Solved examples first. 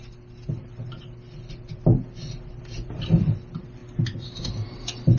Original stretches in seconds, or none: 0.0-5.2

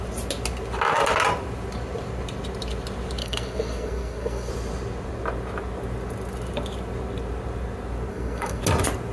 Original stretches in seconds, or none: 0.0-3.2; 4.5-8.1; 8.6-9.1

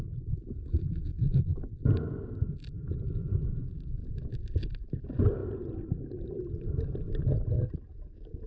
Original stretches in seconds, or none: 0.0-8.5